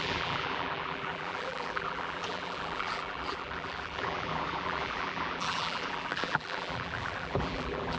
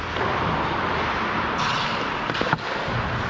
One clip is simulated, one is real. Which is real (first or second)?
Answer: second